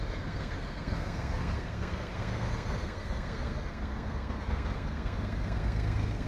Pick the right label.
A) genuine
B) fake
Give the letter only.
B